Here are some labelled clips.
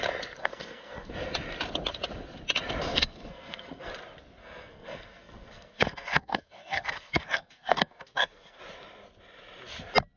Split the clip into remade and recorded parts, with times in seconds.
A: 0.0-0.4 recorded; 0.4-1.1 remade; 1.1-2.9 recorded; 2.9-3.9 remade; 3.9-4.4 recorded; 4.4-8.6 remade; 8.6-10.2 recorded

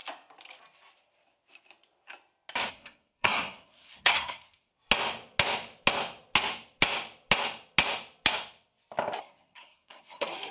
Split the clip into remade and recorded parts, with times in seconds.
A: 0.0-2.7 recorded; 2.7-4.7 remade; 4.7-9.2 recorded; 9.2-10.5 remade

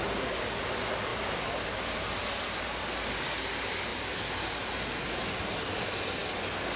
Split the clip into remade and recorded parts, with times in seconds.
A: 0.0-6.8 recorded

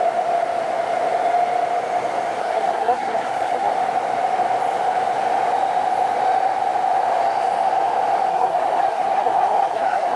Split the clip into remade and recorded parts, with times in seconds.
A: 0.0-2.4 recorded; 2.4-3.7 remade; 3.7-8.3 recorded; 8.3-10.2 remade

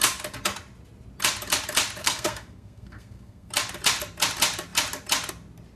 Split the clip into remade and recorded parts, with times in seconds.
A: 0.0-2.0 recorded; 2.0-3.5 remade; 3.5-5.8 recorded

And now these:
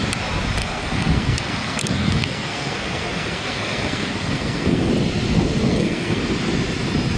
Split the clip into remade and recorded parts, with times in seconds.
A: 0.0-0.6 recorded; 0.6-4.9 remade; 4.9-5.7 recorded; 5.7-6.2 remade; 6.2-7.2 recorded

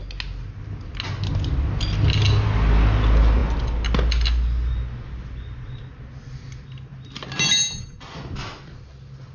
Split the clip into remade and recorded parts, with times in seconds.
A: 0.0-9.3 recorded